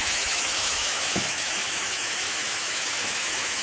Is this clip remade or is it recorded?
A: remade